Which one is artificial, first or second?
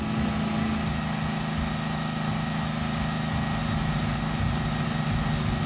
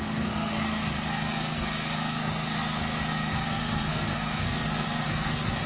second